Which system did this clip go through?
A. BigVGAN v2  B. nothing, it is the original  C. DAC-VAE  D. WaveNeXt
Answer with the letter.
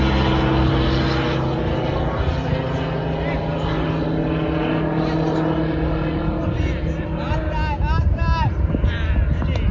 B